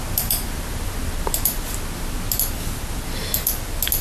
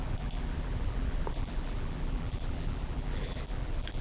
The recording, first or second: first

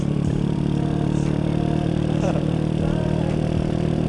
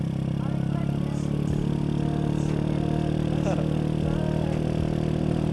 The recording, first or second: second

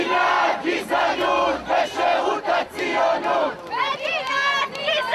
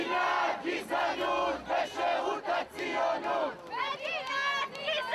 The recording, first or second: second